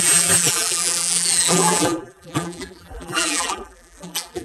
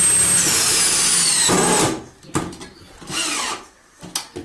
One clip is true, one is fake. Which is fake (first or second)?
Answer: first